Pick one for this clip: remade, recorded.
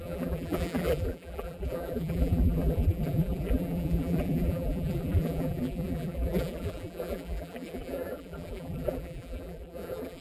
remade